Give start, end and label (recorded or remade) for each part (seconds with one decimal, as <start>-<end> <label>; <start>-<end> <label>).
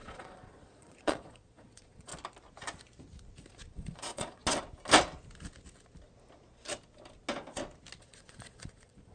0.0-2.1 remade; 2.1-3.7 recorded; 3.7-4.4 remade; 4.4-8.0 recorded; 8.0-9.1 remade